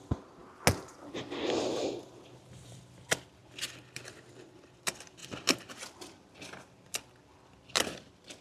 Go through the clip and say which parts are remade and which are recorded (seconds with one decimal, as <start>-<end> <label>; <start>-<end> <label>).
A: 0.0-8.4 recorded